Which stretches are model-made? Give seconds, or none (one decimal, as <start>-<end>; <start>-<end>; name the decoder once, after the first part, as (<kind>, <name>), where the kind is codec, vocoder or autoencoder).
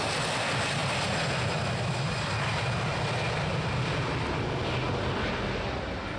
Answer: none